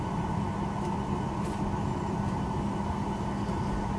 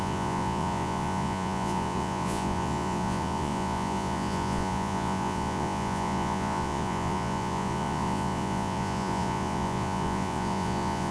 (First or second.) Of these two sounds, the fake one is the second